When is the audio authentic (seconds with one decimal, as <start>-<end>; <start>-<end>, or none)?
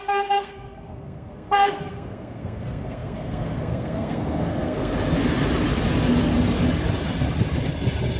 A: 4.9-8.2